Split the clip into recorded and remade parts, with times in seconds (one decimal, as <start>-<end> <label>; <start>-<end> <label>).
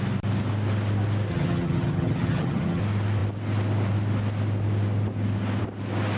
0.0-1.3 recorded; 1.3-2.8 remade; 2.8-6.2 recorded